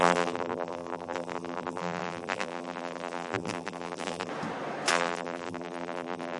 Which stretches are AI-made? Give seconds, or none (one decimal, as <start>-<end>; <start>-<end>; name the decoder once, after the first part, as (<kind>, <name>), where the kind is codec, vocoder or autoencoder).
0.0-4.3 (vocoder, BigVGAN v2); 4.9-6.4

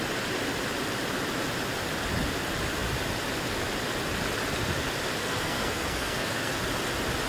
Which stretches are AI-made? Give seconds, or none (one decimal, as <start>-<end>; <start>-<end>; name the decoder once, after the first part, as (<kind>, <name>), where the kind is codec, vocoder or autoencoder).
5.2-6.6 (codec, SNAC)

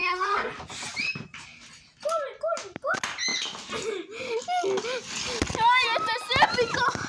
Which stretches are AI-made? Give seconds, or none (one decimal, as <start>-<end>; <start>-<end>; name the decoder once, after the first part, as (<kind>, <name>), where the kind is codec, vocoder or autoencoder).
0.0-0.5 (codec, SNAC)